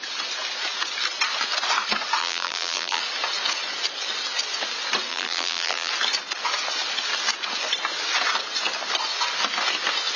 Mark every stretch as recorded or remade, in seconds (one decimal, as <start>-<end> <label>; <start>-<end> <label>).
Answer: 0.0-2.2 recorded; 2.2-3.0 remade; 3.0-5.1 recorded; 5.1-5.9 remade; 5.9-10.2 recorded